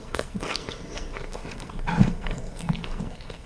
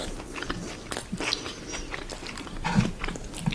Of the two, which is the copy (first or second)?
first